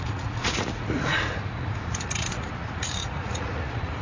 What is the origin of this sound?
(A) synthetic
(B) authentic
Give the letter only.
A